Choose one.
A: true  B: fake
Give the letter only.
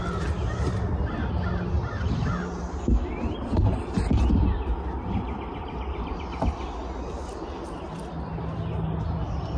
A